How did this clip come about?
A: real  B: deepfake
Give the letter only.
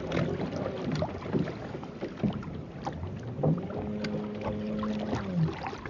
A